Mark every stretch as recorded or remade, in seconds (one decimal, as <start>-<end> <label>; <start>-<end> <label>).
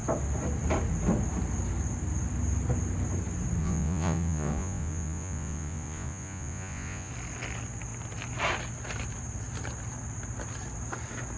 0.0-3.6 recorded; 3.6-7.1 remade; 7.1-11.4 recorded